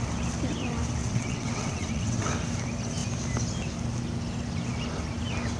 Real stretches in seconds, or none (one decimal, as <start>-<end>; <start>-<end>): 0.0-1.0; 2.3-5.6